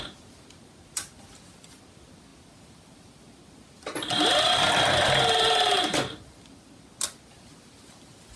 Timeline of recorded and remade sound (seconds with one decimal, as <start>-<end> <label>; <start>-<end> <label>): 0.0-8.4 recorded